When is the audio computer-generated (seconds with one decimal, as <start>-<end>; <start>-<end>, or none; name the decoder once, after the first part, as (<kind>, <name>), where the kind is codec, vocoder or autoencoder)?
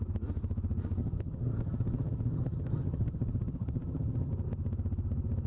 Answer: 1.0-4.3 (vocoder, HiFi-GAN)